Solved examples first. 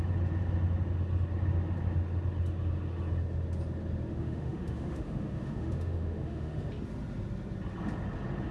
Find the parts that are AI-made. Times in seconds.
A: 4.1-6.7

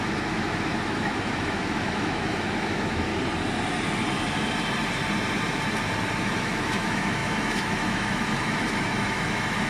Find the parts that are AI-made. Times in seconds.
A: 0.0-3.1; 6.2-9.7